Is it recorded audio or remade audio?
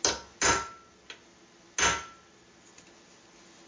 recorded